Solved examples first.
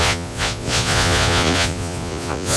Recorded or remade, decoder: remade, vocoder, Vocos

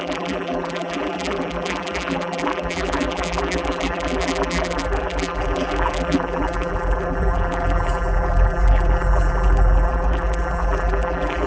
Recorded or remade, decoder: remade, vocoder, BigVGAN v2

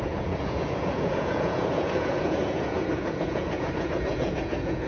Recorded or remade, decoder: remade, vocoder, Vocos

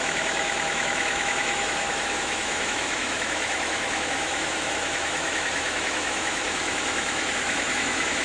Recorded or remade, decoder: remade, autoencoder, DAC-VAE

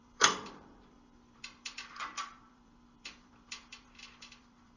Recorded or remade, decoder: remade, vocoder, BigVGAN v2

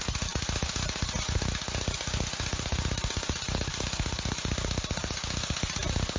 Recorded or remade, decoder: recorded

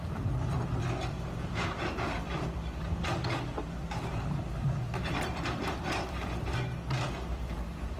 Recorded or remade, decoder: remade, vocoder, BigVGAN v2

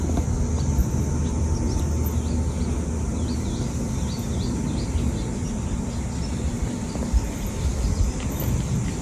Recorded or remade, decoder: recorded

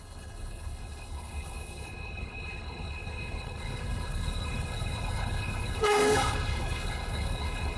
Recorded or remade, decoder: remade, codec, HILCodec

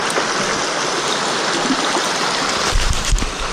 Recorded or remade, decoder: recorded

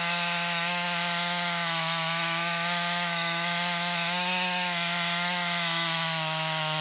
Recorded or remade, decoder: remade, autoencoder, DAC-VAE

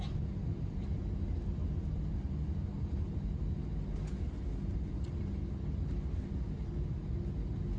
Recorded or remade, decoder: recorded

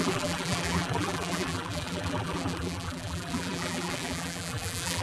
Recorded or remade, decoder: remade, vocoder, BigVGAN v2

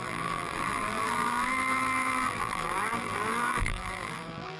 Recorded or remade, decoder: remade, vocoder, BigVGAN v2